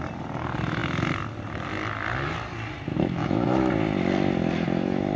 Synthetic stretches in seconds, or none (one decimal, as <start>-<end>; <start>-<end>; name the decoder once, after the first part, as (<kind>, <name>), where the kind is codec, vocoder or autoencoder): 2.9-3.7 (autoencoder, DAC-VAE)